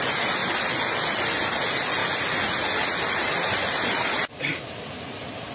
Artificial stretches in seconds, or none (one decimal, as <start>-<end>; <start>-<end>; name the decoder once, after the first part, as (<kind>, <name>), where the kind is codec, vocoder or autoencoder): none